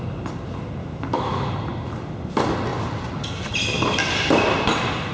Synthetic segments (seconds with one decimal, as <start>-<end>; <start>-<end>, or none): 0.8-1.5